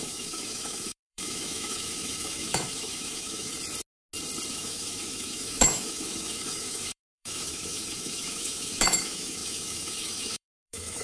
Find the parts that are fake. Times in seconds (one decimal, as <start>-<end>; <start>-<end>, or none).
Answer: 0.0-3.5; 4.5-11.0